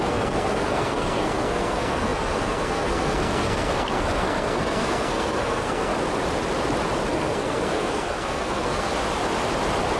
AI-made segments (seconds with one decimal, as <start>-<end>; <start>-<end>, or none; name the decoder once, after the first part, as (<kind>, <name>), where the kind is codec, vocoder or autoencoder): 0.0-5.9 (codec, SNAC); 7.1-8.9